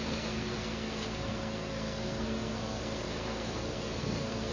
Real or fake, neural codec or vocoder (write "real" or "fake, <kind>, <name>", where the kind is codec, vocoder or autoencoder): fake, codec, SNAC